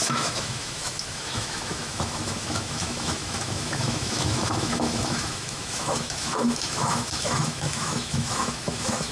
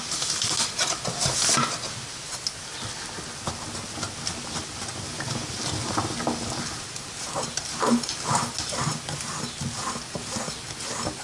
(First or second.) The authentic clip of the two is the second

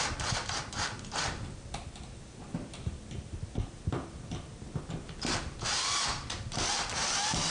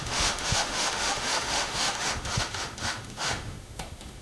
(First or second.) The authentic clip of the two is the first